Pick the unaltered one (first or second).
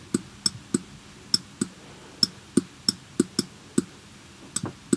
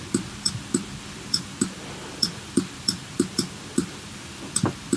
first